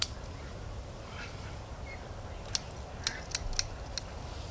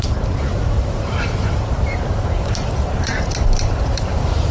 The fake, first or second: second